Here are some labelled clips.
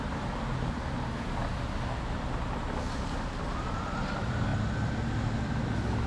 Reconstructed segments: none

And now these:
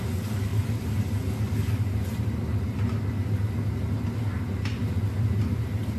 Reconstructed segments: none

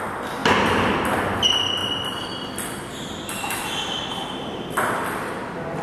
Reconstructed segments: none

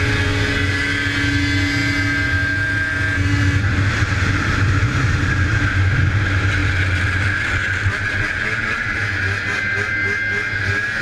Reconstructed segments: 6.6-9.2 (vocoder, BigVGAN v2)